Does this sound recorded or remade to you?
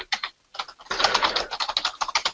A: recorded